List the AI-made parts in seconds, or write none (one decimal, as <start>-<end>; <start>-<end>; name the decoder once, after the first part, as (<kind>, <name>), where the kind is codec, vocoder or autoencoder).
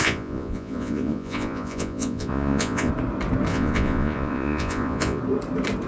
0.0-2.9 (vocoder, Vocos); 3.5-5.2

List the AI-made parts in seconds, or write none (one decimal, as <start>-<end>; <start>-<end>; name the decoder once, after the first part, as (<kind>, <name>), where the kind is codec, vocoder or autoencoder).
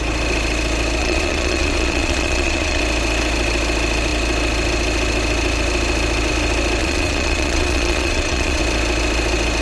1.0-2.8 (vocoder, Vocos); 6.8-8.6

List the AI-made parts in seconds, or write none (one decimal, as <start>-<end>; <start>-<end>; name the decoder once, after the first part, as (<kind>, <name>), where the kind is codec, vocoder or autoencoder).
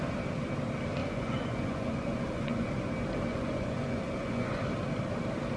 1.0-2.7 (vocoder, Vocos); 3.3-4.6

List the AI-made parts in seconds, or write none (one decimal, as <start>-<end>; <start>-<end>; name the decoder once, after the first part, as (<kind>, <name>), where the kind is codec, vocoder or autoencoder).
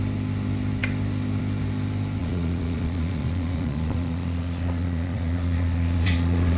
2.2-6.6 (vocoder, Vocos)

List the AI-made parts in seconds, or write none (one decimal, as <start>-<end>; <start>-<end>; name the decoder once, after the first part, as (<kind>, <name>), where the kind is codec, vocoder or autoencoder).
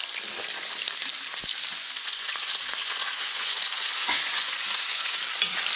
1.7-5.2 (vocoder, Vocos)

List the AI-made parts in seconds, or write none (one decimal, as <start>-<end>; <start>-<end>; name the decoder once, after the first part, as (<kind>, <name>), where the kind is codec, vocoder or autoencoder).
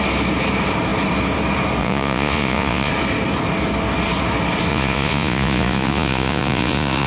1.8-2.9 (vocoder, Vocos); 4.7-7.1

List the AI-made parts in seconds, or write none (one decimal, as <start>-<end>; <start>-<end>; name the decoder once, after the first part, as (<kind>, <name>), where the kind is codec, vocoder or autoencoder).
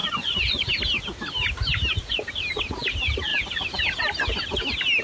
0.0-0.7 (vocoder, Vocos)